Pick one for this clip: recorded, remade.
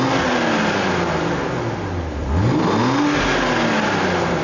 recorded